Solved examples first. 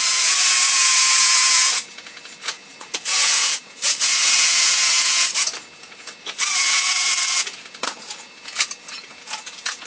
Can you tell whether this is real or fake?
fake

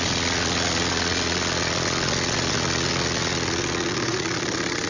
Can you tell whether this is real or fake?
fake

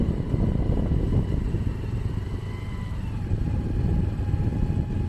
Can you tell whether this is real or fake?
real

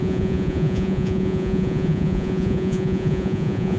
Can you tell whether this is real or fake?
fake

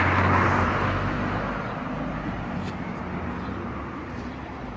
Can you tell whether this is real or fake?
real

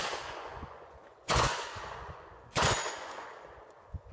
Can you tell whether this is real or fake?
fake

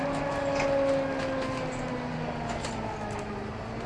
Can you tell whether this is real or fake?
real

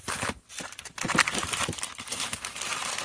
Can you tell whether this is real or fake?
real